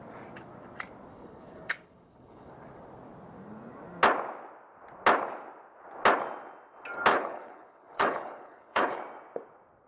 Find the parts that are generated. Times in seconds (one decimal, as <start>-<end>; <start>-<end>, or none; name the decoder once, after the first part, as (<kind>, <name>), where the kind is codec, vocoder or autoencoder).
1.1-2.5 (codec, HILCodec); 7.1-9.0